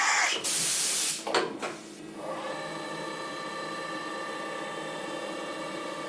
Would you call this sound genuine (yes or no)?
no